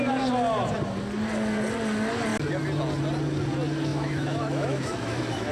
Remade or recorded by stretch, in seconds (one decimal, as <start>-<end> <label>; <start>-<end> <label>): 0.0-3.9 recorded; 3.9-5.5 remade